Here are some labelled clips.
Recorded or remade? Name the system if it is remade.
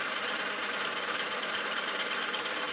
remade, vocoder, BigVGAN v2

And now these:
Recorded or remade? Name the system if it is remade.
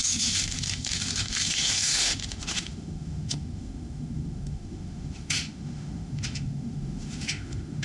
remade, autoencoder, DAC-VAE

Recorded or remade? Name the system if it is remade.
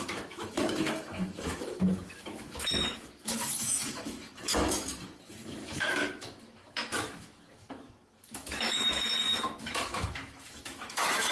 remade, autoencoder, DAC-VAE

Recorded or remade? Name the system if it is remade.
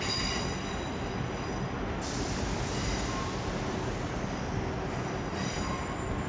recorded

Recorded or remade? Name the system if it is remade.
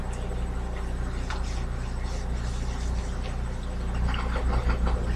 recorded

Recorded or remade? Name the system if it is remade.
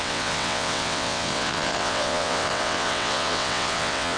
remade, vocoder, WaveNeXt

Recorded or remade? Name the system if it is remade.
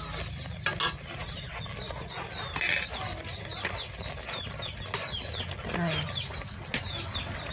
recorded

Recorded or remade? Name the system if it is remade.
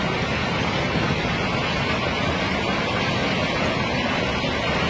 recorded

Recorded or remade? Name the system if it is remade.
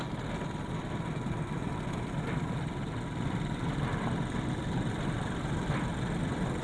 recorded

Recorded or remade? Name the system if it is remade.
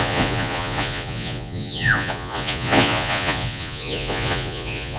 remade, vocoder, Vocos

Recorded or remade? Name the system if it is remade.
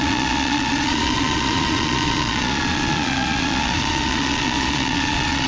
remade, vocoder, Vocos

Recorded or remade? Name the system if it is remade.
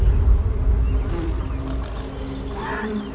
recorded